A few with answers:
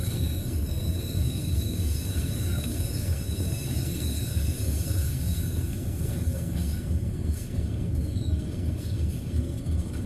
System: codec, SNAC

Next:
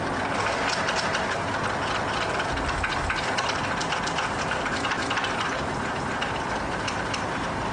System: none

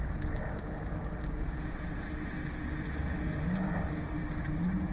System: none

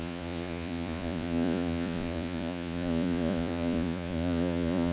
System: vocoder, Vocos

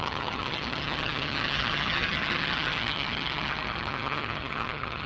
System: vocoder, HiFi-GAN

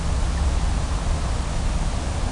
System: none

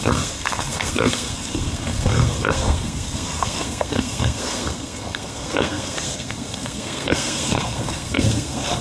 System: codec, SNAC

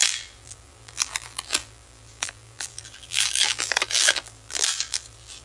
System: vocoder, BigVGAN v2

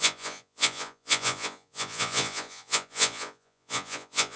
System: vocoder, Vocos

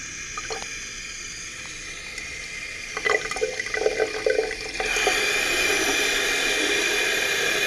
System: none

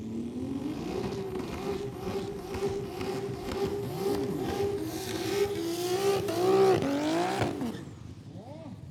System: none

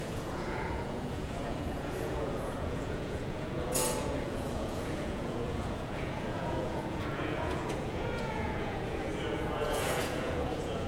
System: vocoder, Vocos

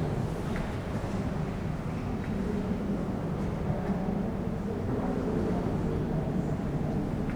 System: none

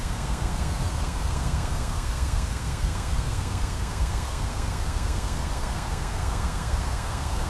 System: codec, SNAC